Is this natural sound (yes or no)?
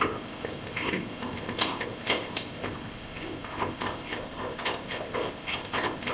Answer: no